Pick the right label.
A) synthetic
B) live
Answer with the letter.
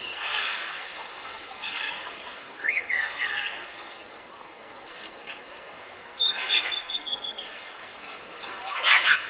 A